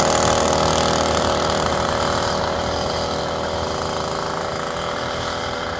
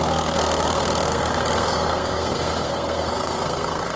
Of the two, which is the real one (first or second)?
first